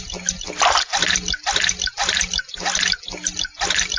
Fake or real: real